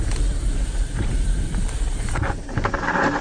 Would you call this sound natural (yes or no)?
no